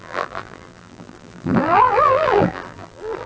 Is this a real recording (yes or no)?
no